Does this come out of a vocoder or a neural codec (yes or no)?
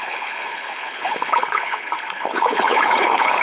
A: yes